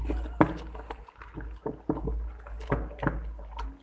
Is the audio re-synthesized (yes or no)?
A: no